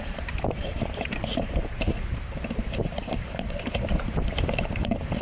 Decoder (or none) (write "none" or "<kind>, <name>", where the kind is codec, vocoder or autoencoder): vocoder, BigVGAN v2